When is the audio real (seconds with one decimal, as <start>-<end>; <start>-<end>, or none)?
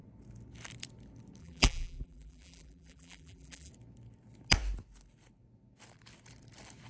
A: 0.0-1.4; 3.7-6.9